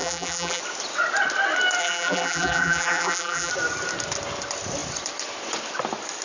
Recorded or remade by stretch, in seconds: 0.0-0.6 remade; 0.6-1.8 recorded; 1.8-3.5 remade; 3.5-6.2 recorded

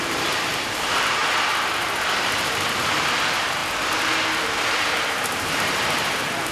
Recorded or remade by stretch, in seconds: 0.0-1.2 remade; 1.2-2.2 recorded; 2.2-3.6 remade; 3.6-4.7 recorded; 4.7-6.5 remade

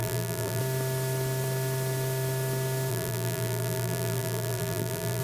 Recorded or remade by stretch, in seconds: 0.0-0.6 remade; 0.6-2.9 recorded; 2.9-5.2 remade